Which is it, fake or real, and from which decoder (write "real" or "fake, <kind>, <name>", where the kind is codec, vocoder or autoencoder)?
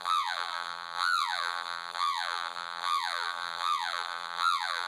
fake, vocoder, BigVGAN v2